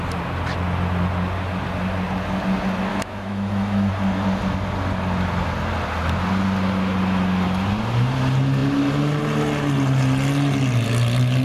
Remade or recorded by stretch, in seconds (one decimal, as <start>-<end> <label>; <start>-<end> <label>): 0.0-2.9 recorded; 2.9-3.9 remade; 3.9-11.4 recorded